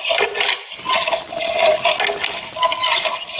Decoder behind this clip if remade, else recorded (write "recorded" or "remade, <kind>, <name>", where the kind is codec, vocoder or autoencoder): recorded